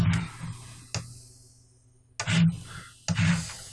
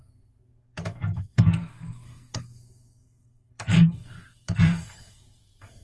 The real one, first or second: first